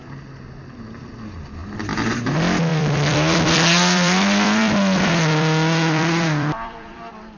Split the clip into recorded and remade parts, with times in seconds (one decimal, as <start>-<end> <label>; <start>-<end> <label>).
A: 0.0-2.7 recorded; 2.7-7.4 remade